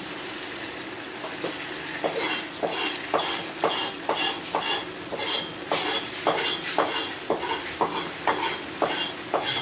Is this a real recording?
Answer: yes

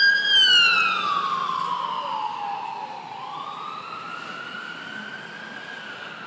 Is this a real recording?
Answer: yes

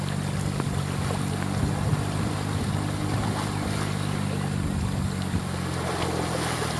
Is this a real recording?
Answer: yes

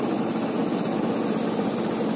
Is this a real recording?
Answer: yes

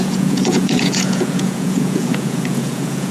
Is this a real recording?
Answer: no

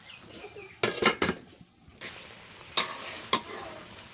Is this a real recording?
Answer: yes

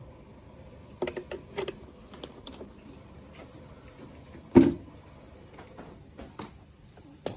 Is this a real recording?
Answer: no